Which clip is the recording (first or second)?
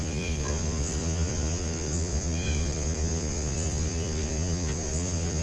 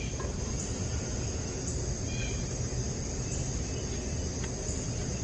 second